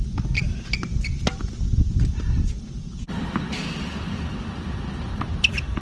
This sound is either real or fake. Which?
real